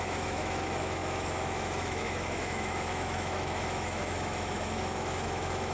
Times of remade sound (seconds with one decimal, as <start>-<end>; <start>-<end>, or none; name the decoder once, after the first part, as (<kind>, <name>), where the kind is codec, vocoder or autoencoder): 0.0-5.7 (autoencoder, DAC-VAE)